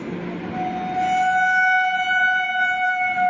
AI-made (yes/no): no